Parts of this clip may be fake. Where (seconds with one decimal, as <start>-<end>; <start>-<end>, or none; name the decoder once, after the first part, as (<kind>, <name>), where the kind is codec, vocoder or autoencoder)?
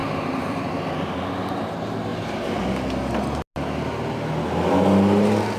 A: 0.0-1.2 (vocoder, BigVGAN v2)